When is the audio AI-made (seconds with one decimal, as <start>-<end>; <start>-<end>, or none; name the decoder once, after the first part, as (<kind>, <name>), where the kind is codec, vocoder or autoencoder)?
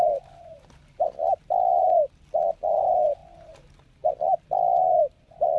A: none